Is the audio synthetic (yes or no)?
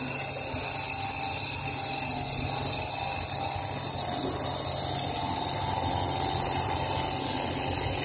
no